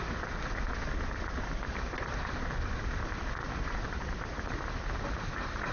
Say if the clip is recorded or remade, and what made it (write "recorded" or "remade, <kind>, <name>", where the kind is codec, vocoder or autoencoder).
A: recorded